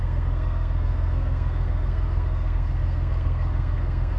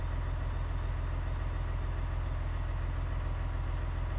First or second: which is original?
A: second